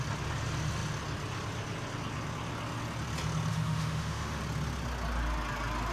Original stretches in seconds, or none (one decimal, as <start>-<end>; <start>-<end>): 0.0-3.5; 4.4-5.9

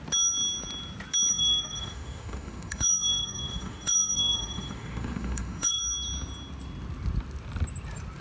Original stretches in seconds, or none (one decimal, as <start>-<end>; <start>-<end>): 0.0-1.3; 5.8-8.2

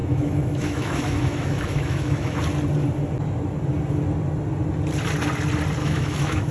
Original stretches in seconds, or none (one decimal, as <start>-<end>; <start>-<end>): 2.4-5.8

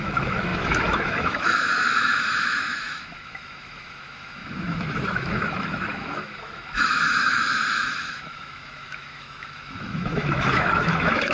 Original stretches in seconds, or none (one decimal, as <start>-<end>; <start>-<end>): none